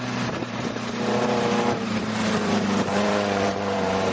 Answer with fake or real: fake